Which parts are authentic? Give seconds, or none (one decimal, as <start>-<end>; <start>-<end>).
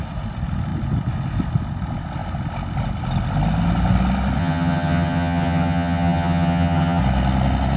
0.0-4.4; 7.0-7.8